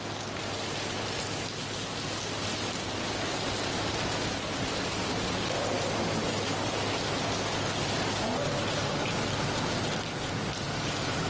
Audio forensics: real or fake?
real